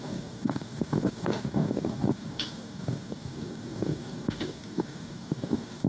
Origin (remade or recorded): remade